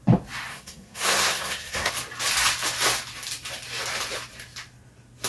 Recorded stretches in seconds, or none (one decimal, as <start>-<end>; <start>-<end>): 0.0-0.5; 1.9-5.3